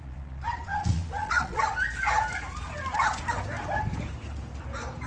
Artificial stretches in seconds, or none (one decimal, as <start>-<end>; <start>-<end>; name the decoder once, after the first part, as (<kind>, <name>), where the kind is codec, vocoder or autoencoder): 0.0-1.7 (vocoder, Vocos)